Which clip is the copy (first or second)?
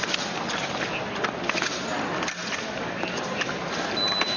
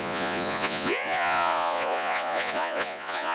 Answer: second